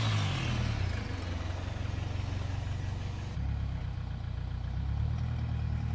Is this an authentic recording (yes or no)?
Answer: yes